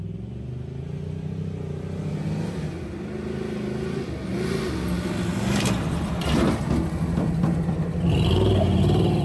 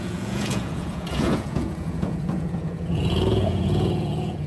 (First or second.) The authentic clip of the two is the first